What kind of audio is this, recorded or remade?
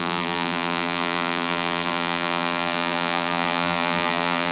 remade